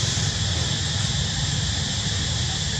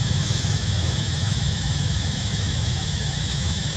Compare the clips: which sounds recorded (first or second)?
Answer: first